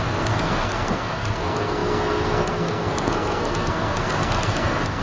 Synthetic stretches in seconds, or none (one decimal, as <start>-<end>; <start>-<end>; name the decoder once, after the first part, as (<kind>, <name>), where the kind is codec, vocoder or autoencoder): 0.0-5.0 (codec, SNAC)